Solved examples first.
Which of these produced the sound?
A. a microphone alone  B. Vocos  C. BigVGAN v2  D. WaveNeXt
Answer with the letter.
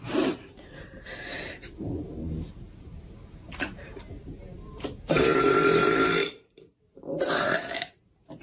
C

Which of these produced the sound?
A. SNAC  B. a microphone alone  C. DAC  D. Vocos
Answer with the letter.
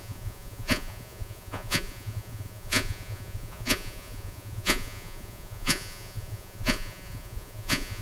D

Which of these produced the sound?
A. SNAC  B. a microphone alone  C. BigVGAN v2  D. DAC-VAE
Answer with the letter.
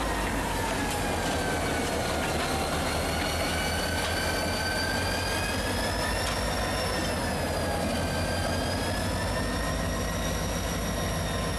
B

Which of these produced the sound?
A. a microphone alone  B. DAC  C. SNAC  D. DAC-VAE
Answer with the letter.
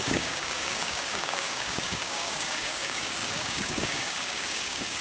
B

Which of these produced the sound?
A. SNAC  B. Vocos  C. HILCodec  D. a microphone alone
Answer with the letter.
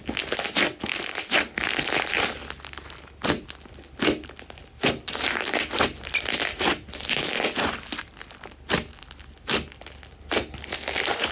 D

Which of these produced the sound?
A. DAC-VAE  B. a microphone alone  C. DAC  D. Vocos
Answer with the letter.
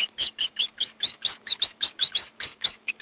C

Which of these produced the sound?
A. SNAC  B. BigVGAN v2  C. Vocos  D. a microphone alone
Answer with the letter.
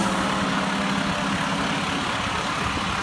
D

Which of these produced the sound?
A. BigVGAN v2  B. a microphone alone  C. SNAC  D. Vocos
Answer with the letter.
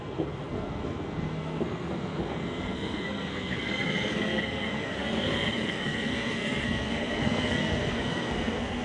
C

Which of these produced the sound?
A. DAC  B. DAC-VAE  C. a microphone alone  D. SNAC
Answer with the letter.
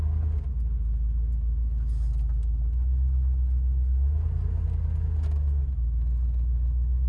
C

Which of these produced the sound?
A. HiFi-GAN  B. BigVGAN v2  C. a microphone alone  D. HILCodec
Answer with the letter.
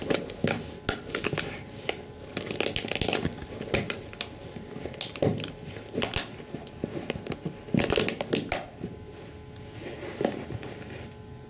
C